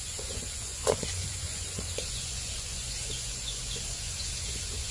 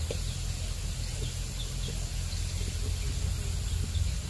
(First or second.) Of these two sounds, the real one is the second